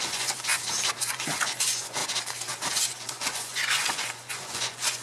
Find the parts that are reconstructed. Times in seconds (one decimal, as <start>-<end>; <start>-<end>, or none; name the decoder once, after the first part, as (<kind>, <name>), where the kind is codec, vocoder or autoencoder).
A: 0.0-0.5 (vocoder, Vocos); 1.0-2.0; 2.7-5.0